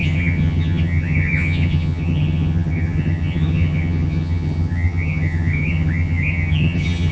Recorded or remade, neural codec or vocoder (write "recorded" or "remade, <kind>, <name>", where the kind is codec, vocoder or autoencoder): remade, vocoder, HiFi-GAN